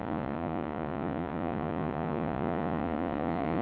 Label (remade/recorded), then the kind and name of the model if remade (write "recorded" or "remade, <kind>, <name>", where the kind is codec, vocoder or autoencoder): remade, vocoder, Vocos